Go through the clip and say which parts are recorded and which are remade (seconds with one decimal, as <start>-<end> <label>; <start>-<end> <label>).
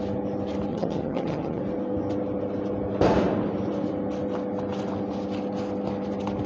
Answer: 0.0-0.7 recorded; 0.7-1.6 remade; 1.6-6.5 recorded